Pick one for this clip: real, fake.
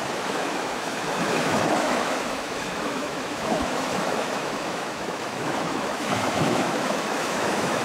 fake